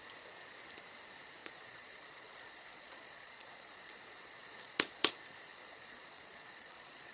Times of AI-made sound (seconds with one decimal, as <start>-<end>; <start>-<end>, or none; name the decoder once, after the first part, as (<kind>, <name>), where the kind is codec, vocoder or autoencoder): 1.4-5.1 (vocoder, Vocos); 5.5-7.1